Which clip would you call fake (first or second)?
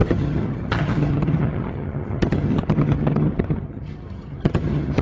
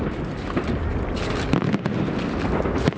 first